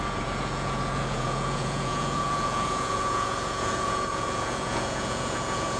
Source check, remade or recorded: remade